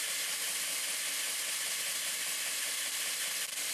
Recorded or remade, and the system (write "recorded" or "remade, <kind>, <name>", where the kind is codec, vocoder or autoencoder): recorded